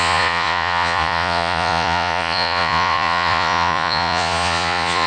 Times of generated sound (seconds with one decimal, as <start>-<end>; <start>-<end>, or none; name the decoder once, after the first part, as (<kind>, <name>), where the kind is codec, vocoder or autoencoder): 0.0-5.1 (vocoder, Vocos)